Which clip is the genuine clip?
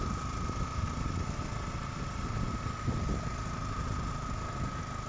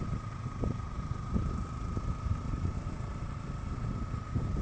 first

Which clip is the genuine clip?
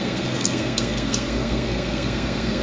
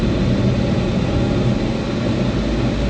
second